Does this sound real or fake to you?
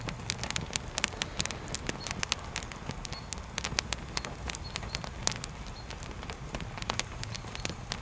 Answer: real